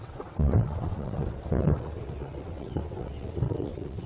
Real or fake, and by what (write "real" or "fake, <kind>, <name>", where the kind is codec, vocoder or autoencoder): fake, vocoder, WaveNeXt